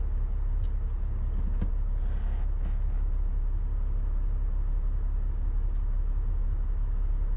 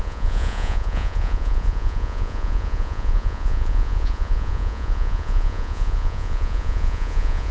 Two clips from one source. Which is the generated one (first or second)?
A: second